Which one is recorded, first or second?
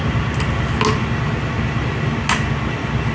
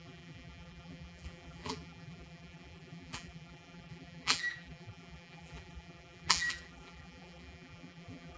first